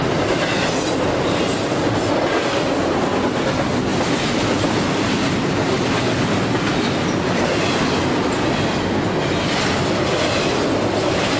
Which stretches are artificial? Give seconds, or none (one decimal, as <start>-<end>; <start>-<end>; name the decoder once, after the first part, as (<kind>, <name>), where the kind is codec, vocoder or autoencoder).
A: none